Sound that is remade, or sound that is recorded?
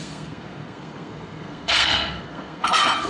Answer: remade